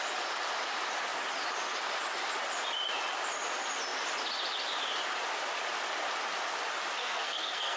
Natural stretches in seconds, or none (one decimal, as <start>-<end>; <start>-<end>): 0.0-7.0